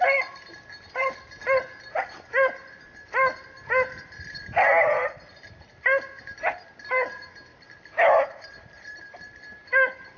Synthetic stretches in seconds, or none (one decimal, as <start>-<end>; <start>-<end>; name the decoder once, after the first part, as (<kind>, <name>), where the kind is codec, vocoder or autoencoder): none